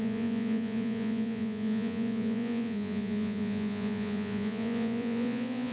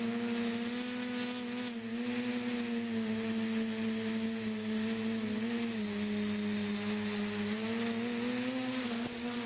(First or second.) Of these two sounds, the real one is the second